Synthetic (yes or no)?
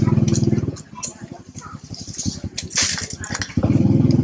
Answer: no